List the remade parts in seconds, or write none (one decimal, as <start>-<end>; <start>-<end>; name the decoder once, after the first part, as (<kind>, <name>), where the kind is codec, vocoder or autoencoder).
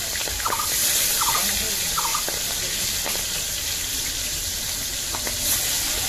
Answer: none